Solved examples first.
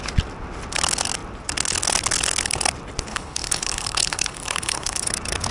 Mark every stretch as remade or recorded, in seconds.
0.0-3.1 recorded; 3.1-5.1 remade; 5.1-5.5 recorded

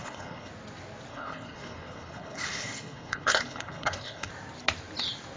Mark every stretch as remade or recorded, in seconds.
0.0-0.5 remade; 0.5-1.1 recorded; 1.1-4.3 remade; 4.3-5.4 recorded

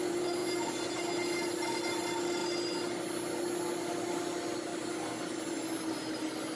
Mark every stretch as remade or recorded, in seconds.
0.0-6.6 recorded

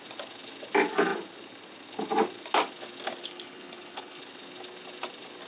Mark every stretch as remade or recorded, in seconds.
0.0-3.2 recorded; 3.2-4.2 remade; 4.2-5.5 recorded

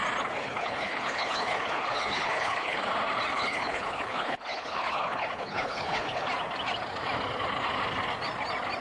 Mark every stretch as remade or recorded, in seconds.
0.0-0.4 recorded; 0.4-2.8 remade; 2.8-3.3 recorded; 3.3-6.3 remade; 6.3-8.8 recorded

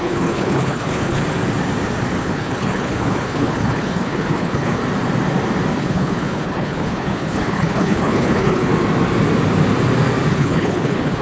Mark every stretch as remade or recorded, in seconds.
0.0-1.2 remade; 1.2-2.2 recorded; 2.2-4.8 remade; 4.8-5.8 recorded; 5.8-8.7 remade; 8.7-10.3 recorded; 10.3-11.2 remade

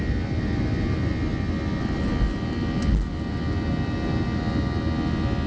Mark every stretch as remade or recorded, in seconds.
0.0-5.5 recorded